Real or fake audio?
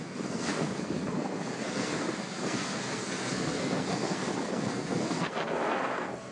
fake